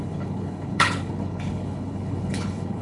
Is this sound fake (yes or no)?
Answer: yes